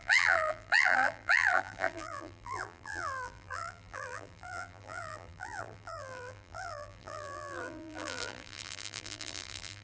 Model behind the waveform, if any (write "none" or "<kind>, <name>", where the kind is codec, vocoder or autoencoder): vocoder, BigVGAN v2